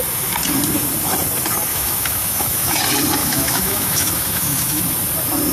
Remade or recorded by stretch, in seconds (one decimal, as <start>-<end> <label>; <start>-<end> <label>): 0.0-1.7 recorded; 1.7-2.8 remade; 2.8-3.2 recorded; 3.2-4.8 remade; 4.8-5.5 recorded